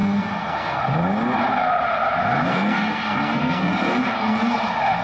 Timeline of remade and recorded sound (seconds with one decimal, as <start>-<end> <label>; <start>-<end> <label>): 0.0-0.8 remade; 0.8-2.5 recorded; 2.5-4.6 remade; 4.6-5.0 recorded